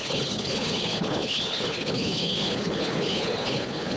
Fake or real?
fake